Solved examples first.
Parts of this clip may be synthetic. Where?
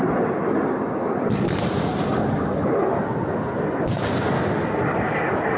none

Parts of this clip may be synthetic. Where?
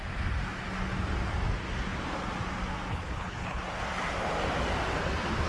2.9-3.6 (codec, HILCodec)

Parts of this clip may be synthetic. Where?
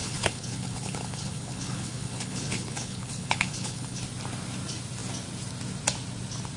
0.0-4.0 (codec, HILCodec)